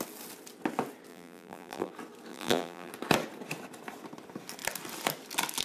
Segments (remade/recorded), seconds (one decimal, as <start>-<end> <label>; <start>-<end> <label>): 0.0-1.1 recorded; 1.1-1.9 remade; 1.9-2.3 recorded; 2.3-2.9 remade; 2.9-5.6 recorded